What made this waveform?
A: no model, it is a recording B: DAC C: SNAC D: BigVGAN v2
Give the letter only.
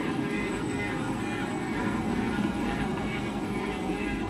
C